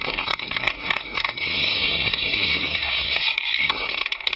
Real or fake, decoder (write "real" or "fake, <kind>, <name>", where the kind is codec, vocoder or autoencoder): fake, codec, SNAC